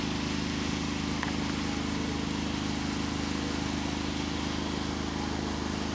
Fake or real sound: real